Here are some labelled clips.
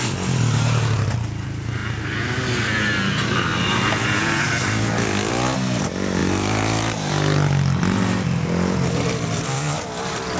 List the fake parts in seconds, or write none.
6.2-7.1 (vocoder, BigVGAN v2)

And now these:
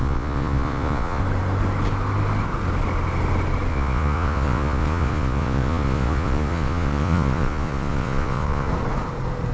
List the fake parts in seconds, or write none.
0.0-1.2 (vocoder, Vocos); 3.7-8.7

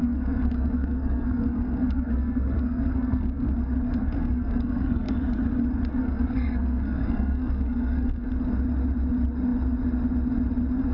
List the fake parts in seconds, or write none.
0.0-3.5 (codec, SNAC); 4.0-5.2; 5.9-8.3

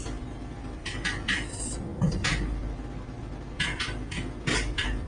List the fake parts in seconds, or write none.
none

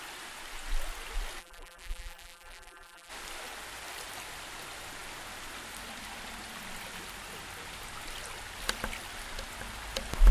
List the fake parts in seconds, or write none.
1.4-3.1 (vocoder, BigVGAN v2)